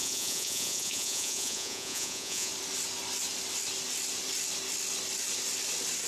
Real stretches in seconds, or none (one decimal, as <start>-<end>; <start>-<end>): 2.5-6.1